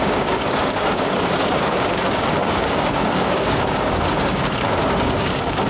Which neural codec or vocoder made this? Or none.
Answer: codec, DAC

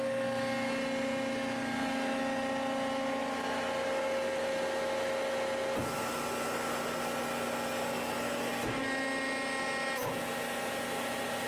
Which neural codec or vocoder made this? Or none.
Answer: none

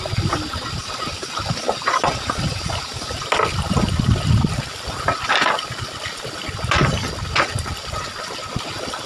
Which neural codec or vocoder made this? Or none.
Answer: none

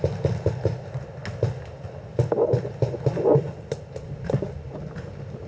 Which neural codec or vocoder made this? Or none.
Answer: none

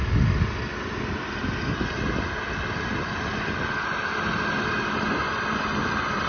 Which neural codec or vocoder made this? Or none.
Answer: none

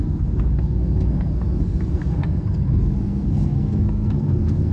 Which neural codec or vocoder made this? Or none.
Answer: codec, SNAC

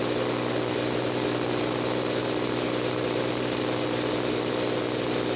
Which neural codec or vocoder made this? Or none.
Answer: none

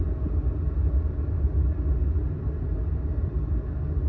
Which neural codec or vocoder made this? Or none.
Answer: none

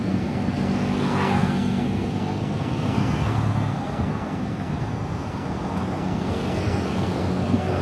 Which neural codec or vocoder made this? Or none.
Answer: codec, SNAC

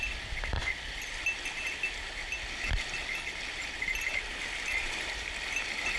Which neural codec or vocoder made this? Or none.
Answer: none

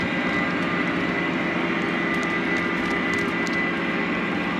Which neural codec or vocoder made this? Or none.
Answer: none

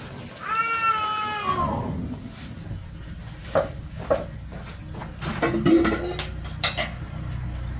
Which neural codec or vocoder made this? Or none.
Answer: none